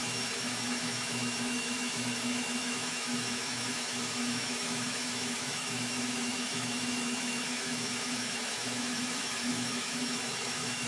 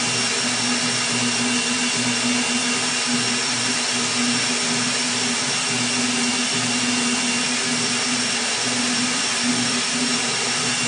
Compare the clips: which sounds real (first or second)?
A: second